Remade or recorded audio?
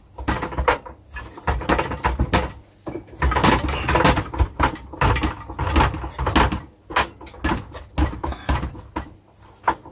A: recorded